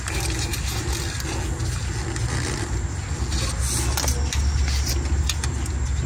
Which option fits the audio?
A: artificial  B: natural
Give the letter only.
B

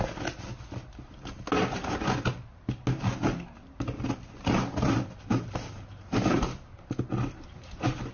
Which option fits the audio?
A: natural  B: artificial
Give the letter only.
A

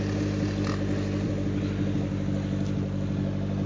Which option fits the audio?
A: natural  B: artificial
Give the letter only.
A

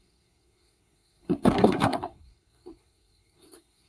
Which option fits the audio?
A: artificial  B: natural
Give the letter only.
A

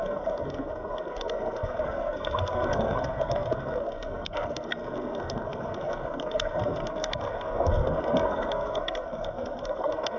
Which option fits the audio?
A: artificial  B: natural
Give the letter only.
A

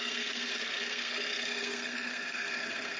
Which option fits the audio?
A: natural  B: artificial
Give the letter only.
B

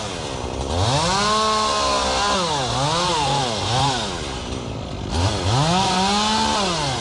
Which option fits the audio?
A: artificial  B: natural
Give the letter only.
B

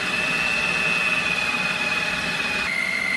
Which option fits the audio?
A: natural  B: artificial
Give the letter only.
A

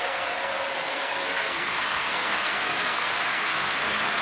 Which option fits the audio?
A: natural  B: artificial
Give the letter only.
B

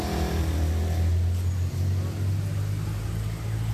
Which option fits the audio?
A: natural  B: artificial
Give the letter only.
A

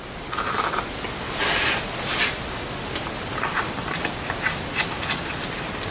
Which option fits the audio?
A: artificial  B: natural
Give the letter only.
B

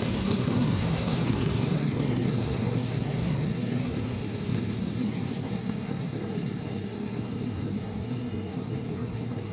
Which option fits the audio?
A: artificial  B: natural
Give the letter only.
A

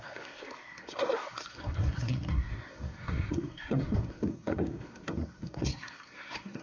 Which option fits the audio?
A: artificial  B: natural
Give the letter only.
A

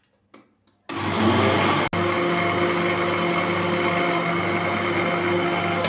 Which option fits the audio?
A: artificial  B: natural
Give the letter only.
B